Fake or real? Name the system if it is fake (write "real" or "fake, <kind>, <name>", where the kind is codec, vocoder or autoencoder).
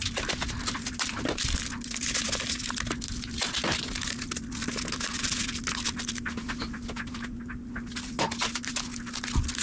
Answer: real